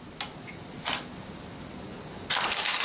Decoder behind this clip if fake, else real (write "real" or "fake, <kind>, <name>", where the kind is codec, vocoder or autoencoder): real